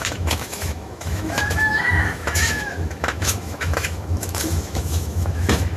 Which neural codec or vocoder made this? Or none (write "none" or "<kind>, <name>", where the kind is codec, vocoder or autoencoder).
autoencoder, DAC-VAE